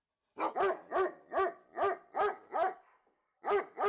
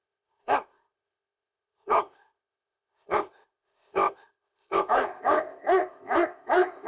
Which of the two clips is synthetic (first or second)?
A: second